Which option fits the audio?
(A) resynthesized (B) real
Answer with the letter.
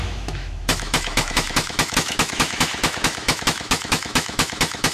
A